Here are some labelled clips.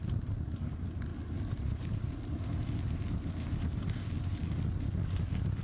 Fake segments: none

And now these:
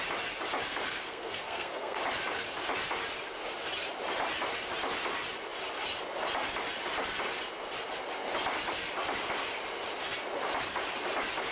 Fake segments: 0.7-2.0

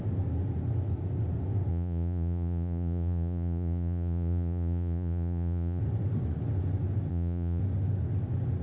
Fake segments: 1.7-5.8; 7.1-7.6

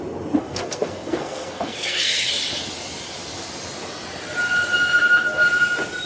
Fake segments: 0.4-2.3

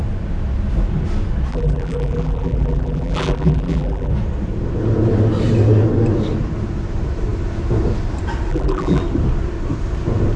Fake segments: 1.5-4.1; 8.5-9.0

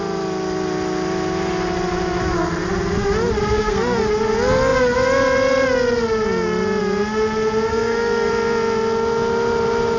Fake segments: 3.5-4.0; 7.7-8.3